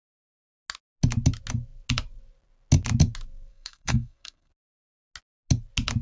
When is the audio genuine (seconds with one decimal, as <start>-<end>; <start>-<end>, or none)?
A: 0.0-3.5; 4.5-6.0